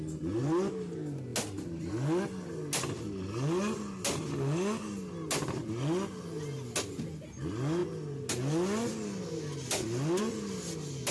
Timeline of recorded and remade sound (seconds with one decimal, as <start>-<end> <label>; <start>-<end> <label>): 0.0-11.1 recorded